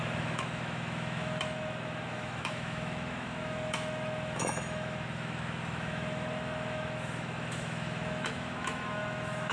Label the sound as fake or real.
fake